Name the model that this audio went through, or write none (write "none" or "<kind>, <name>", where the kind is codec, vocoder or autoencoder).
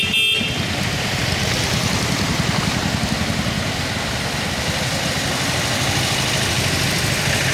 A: none